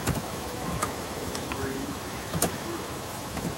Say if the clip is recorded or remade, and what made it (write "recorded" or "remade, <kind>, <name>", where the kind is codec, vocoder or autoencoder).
remade, autoencoder, DAC-VAE